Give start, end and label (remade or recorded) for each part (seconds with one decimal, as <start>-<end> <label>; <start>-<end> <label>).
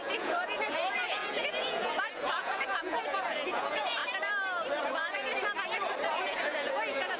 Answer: 0.0-4.0 remade; 4.0-4.8 recorded; 4.8-5.3 remade; 5.3-6.1 recorded; 6.1-7.2 remade